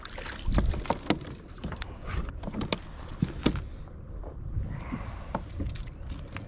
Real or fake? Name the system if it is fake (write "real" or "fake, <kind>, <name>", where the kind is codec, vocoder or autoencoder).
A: fake, vocoder, BigVGAN v2